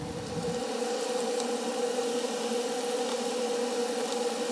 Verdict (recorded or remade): recorded